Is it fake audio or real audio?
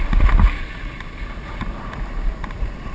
real